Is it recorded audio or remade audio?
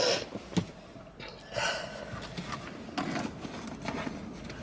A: recorded